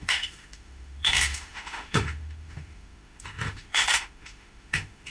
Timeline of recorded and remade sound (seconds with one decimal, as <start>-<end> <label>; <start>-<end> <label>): 0.0-5.1 remade